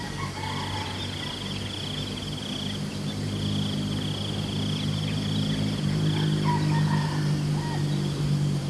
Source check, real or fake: real